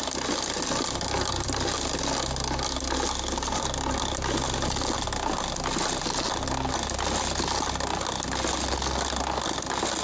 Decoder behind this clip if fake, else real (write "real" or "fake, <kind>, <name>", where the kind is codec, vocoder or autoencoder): real